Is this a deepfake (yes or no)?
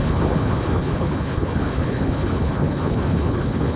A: yes